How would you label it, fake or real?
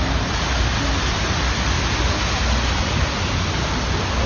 real